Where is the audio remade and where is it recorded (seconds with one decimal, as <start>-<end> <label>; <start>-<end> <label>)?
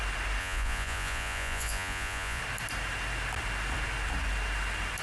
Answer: 0.0-0.4 recorded; 0.4-2.4 remade; 2.4-5.0 recorded